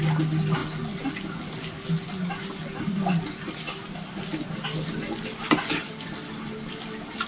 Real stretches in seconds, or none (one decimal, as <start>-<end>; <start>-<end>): 0.0-7.3